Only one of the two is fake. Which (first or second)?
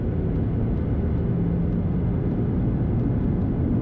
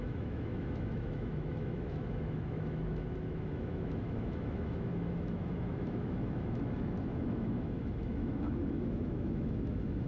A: second